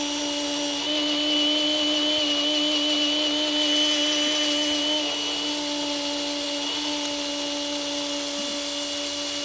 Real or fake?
real